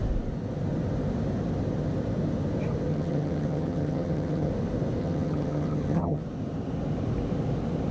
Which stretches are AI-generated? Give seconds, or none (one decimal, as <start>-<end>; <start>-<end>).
2.9-4.5; 5.0-6.2